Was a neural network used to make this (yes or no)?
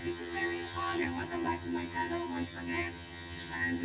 yes